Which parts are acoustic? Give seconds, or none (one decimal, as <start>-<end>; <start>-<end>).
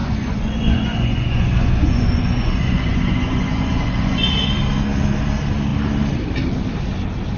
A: 4.3-7.4